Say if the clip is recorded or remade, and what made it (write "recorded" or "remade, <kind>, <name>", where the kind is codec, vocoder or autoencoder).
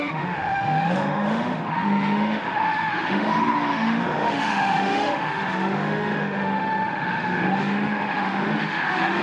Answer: remade, autoencoder, DAC-VAE